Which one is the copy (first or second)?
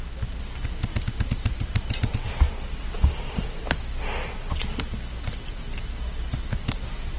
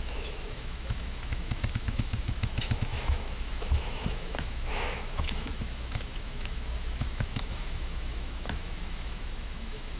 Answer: second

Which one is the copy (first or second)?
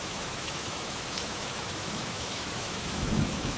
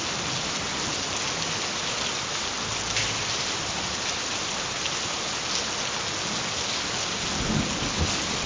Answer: first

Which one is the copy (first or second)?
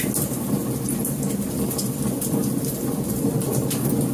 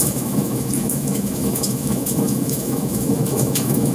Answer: second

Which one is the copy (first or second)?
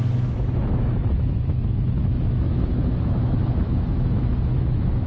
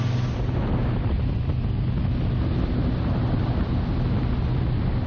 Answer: first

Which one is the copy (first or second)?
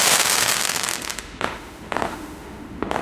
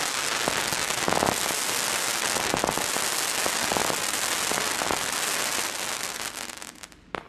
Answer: first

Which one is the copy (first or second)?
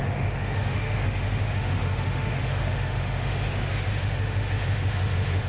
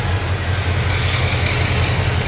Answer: first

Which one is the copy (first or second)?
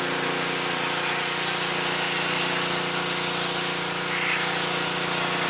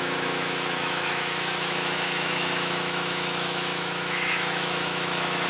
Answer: second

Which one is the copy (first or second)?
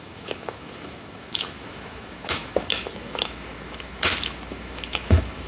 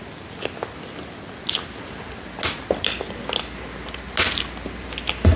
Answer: first